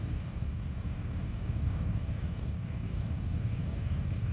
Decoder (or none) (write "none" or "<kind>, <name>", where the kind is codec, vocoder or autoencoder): codec, DAC